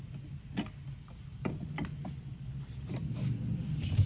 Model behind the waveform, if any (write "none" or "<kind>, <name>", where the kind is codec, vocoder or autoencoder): none